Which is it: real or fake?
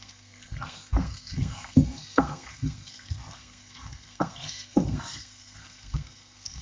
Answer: fake